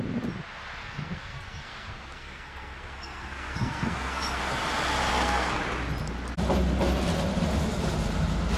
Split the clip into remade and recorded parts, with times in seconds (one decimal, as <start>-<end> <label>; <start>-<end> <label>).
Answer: 0.0-0.8 recorded; 0.8-4.4 remade; 4.4-5.1 recorded; 5.1-5.6 remade; 5.6-8.6 recorded